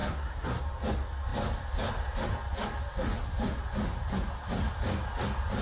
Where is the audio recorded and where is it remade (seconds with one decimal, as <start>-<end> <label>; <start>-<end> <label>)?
0.0-0.6 remade; 0.6-5.6 recorded